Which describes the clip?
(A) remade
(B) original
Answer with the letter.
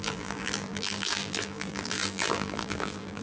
A